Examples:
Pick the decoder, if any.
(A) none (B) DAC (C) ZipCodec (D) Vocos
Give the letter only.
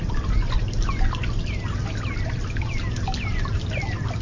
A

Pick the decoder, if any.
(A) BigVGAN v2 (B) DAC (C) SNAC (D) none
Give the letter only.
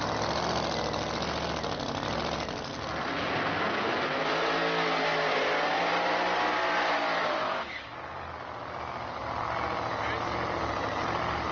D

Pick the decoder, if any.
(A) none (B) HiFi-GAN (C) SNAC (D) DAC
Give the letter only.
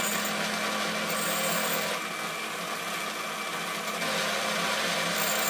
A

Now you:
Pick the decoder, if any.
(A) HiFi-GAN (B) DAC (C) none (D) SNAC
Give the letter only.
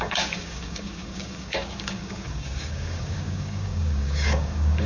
B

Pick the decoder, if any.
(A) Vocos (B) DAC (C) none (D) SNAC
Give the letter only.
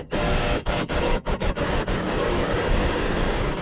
B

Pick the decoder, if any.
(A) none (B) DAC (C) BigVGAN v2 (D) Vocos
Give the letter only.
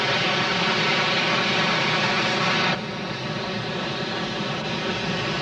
A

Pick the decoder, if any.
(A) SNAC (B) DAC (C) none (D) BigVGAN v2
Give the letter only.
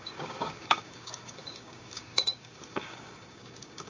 B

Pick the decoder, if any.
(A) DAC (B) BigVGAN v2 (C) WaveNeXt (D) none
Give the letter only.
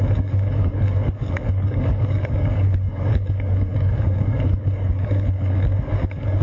A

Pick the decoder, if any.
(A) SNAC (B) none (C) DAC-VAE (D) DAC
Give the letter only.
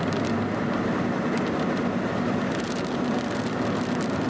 B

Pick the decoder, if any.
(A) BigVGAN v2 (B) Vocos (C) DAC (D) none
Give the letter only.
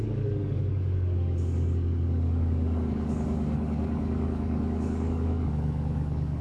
C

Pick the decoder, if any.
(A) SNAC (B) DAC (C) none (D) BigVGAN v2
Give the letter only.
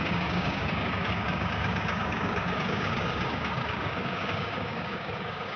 B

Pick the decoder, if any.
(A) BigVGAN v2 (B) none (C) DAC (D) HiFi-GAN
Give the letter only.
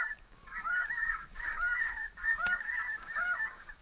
C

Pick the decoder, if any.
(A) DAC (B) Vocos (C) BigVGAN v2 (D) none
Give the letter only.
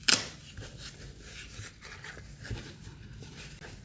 D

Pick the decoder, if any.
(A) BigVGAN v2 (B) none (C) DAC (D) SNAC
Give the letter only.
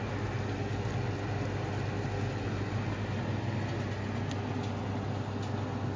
B